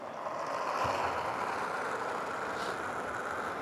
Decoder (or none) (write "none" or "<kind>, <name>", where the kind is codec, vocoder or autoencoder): none